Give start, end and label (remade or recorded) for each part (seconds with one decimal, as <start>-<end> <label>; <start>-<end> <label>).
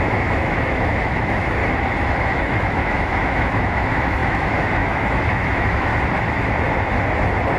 0.0-1.6 remade; 1.6-2.3 recorded; 2.3-5.9 remade; 5.9-7.6 recorded